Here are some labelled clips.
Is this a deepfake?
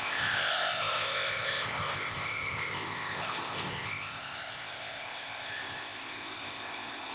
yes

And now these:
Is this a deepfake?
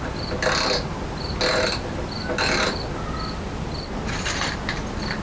no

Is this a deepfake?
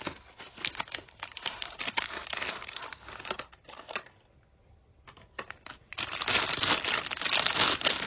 no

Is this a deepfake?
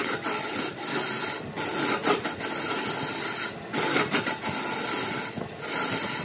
no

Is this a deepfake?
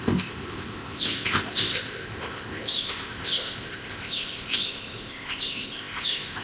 yes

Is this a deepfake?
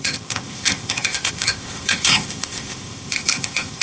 yes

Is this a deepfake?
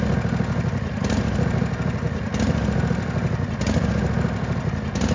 no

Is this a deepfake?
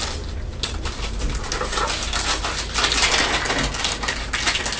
no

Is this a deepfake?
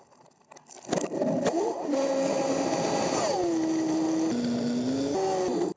no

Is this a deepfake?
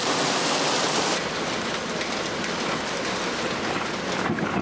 no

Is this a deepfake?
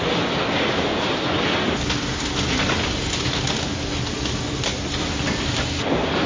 no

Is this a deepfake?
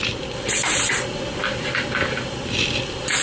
no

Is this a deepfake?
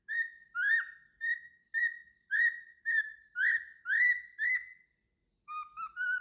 no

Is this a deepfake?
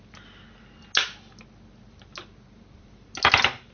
no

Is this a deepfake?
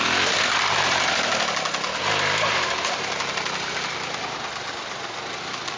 no